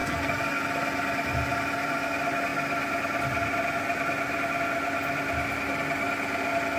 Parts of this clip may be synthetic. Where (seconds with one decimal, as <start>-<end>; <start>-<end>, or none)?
0.0-0.6